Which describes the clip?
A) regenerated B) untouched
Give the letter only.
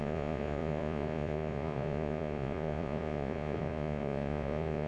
A